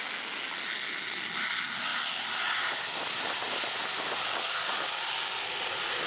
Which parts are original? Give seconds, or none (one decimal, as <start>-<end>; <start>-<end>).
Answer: 0.0-6.1